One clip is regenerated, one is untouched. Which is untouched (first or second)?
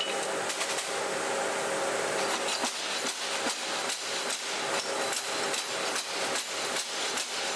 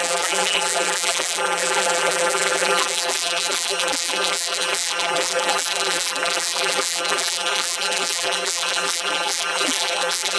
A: first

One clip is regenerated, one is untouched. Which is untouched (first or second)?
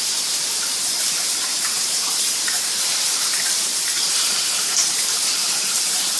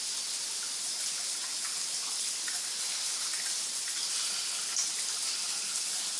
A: second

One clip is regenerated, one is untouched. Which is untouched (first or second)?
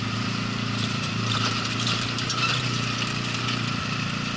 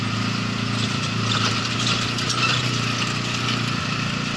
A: second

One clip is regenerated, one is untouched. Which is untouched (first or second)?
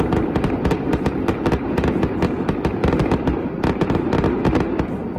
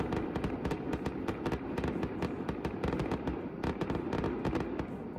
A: second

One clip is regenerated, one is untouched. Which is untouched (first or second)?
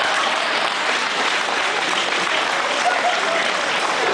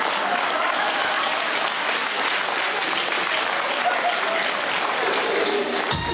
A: second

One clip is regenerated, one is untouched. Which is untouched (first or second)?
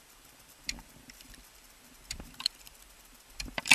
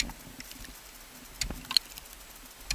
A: second